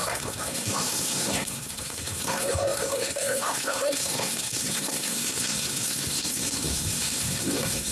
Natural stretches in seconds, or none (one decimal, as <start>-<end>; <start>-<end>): none